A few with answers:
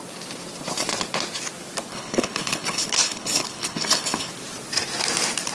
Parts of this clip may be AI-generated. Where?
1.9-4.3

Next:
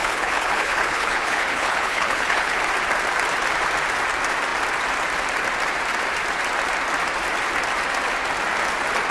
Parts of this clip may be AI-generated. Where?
0.0-2.6

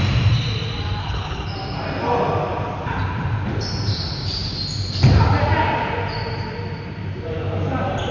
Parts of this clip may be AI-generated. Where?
1.0-1.5